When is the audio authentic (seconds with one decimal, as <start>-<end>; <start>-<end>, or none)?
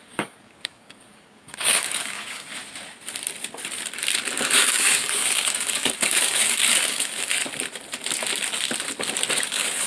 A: 2.6-4.4; 7.4-9.3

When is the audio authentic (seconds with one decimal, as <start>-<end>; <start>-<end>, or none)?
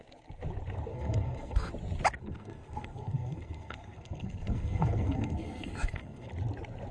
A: 0.0-0.9; 1.7-2.2; 6.3-6.9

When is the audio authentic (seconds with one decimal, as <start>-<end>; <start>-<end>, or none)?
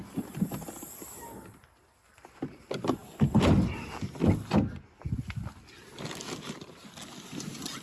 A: 0.0-7.8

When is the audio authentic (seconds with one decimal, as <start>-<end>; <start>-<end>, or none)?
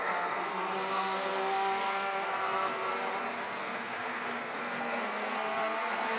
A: 2.9-3.6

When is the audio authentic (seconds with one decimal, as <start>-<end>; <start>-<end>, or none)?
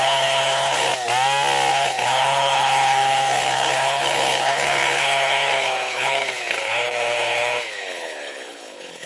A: 0.9-1.7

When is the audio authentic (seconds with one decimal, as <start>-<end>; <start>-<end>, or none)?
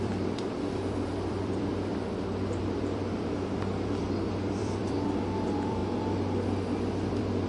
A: 5.8-7.1